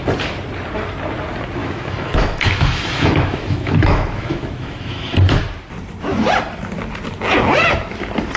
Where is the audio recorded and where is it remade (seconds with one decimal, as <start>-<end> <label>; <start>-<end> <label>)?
0.0-1.6 recorded; 1.6-5.4 remade; 5.4-8.4 recorded